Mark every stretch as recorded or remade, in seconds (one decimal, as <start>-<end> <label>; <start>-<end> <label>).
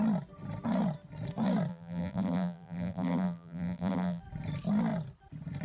0.0-1.7 recorded; 1.7-4.2 remade; 4.2-5.6 recorded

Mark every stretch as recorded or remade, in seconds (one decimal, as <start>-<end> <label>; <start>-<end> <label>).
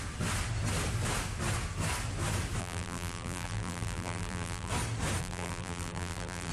0.0-2.6 recorded; 2.6-4.7 remade; 4.7-5.2 recorded; 5.2-6.5 remade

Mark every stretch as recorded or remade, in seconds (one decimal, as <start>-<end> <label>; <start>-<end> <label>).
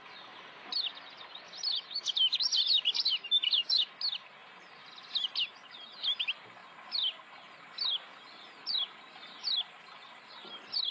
0.0-4.4 recorded; 4.4-5.4 remade; 5.4-10.9 recorded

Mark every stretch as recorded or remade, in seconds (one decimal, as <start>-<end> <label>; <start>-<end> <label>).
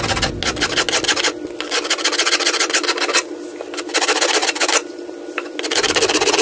0.0-4.4 recorded; 4.4-5.2 remade; 5.2-6.4 recorded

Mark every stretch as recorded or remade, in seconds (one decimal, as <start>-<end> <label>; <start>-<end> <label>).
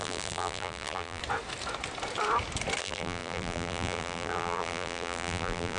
0.0-1.2 remade; 1.2-2.8 recorded; 2.8-5.8 remade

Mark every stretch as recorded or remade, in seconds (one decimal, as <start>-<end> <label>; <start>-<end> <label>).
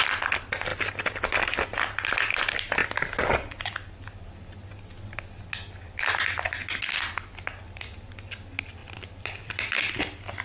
0.0-8.8 recorded; 8.8-9.8 remade; 9.8-10.4 recorded